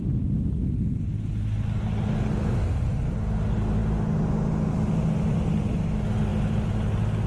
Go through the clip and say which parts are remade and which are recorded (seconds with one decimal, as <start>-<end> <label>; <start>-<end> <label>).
0.0-7.3 recorded